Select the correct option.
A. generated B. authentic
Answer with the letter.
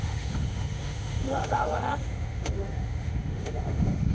A